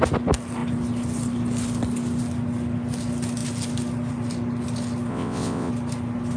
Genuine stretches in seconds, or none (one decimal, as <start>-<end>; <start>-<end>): 0.0-5.1; 5.7-6.4